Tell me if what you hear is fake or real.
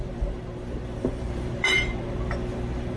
fake